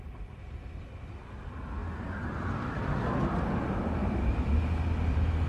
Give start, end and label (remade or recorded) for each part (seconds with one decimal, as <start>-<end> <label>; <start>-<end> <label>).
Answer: 0.0-4.0 recorded; 4.0-4.6 remade; 4.6-5.5 recorded